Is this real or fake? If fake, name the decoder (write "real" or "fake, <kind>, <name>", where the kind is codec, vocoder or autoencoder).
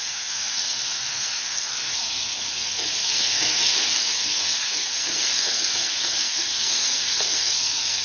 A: fake, codec, SNAC